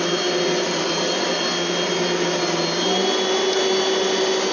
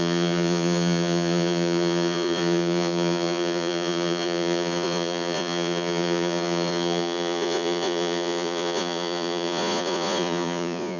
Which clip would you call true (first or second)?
first